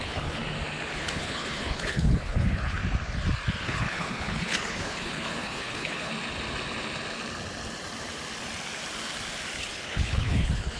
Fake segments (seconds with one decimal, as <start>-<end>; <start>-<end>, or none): 0.0-0.4; 0.9-2.8; 3.6-6.1; 9.6-10.8